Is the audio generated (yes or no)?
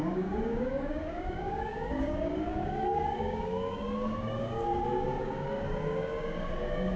yes